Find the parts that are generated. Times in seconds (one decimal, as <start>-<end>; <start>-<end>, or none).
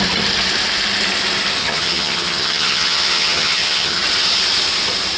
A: 1.6-4.0